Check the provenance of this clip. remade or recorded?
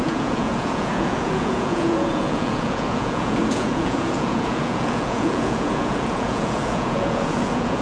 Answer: remade